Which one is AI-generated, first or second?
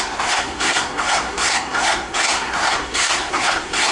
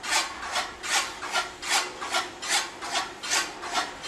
first